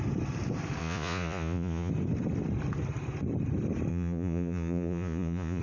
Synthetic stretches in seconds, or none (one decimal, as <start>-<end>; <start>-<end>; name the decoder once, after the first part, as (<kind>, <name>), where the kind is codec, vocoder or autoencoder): 0.8-1.9 (vocoder, Vocos); 3.9-5.6